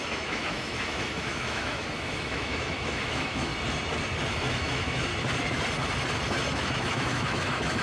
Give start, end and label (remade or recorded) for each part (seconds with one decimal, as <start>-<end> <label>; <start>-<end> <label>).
0.0-3.5 remade; 3.5-4.3 recorded; 4.3-5.1 remade; 5.1-6.5 recorded; 6.5-7.8 remade